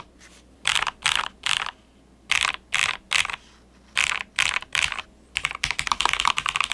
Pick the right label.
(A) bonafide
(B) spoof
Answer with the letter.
A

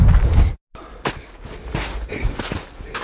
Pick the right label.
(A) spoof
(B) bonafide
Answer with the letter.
B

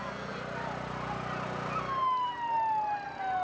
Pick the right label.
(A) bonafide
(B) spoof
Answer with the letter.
A